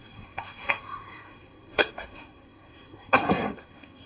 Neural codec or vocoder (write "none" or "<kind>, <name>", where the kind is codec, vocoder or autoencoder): codec, SNAC